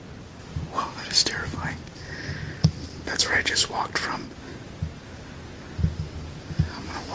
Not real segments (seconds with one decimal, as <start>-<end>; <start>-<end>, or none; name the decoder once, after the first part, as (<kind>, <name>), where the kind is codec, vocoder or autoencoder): none